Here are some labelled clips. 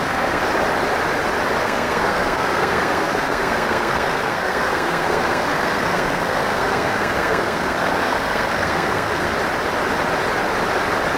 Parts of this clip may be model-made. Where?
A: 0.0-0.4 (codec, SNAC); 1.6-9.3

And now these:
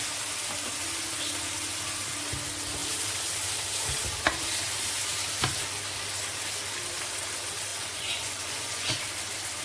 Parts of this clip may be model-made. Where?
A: 7.7-9.0 (vocoder, Vocos)

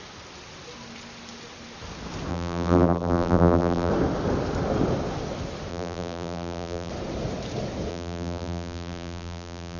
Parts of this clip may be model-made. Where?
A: 2.3-3.9 (vocoder, BigVGAN v2); 5.7-6.9; 7.9-9.8

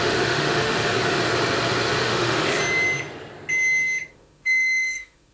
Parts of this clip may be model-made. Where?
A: 0.0-0.8 (autoencoder, DAC-VAE); 2.0-2.6; 4.1-5.3

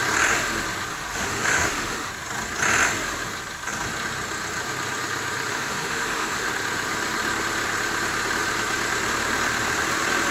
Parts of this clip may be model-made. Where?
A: 0.9-2.1 (autoencoder, DAC-VAE); 5.5-6.5

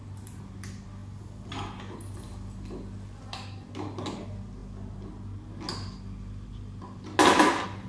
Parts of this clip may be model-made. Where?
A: none

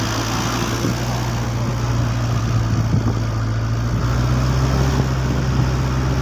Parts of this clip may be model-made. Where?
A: none

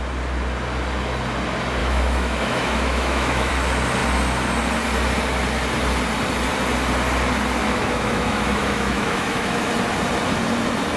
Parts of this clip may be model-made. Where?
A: 1.8-3.5 (autoencoder, DAC-VAE); 7.6-9.7